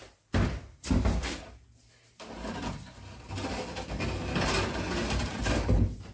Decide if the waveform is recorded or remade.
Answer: recorded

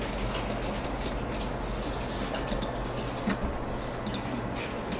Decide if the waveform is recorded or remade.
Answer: recorded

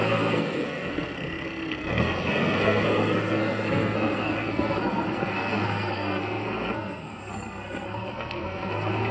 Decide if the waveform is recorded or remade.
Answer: remade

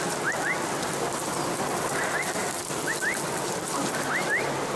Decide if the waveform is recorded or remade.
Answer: recorded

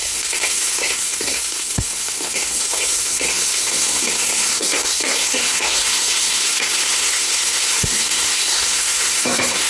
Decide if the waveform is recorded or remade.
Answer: remade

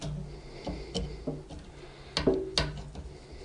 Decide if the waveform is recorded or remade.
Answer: recorded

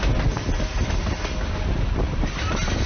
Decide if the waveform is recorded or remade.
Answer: recorded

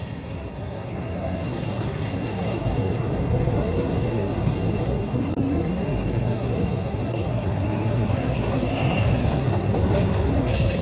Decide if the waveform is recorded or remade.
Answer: remade